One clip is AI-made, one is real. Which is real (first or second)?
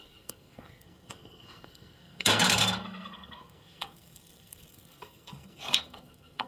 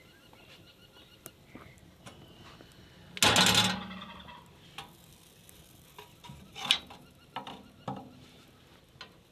second